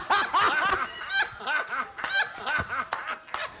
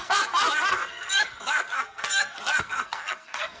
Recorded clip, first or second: first